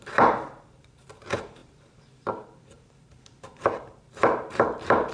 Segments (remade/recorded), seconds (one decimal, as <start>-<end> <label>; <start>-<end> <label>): 0.0-5.1 remade